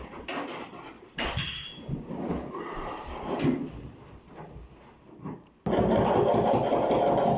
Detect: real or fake real